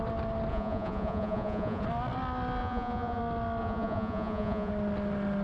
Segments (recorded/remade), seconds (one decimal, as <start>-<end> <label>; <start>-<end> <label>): 0.0-0.5 recorded; 0.5-1.8 remade; 1.8-2.6 recorded; 2.6-3.2 remade; 3.2-3.6 recorded; 3.6-4.7 remade; 4.7-5.4 recorded